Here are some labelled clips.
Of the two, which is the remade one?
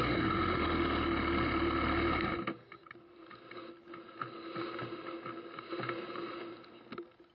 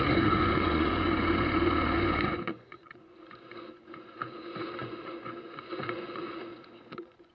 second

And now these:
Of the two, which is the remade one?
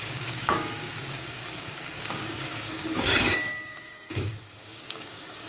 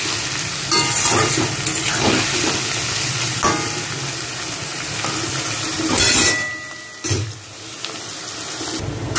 first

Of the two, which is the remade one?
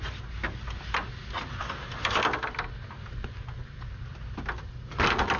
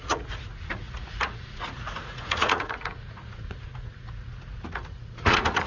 second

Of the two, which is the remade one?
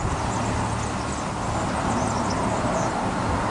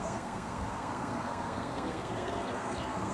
second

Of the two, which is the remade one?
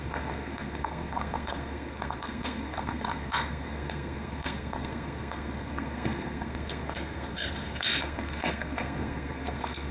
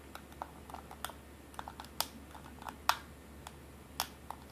first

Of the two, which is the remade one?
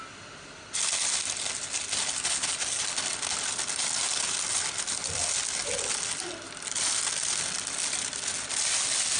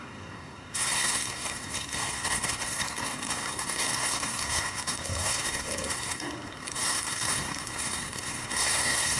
second